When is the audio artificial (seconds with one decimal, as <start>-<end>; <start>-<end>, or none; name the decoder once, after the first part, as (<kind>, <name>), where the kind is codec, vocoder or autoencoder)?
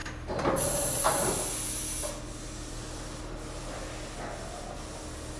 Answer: none